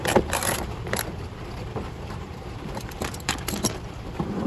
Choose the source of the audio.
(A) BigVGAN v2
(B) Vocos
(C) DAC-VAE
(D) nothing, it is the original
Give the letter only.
A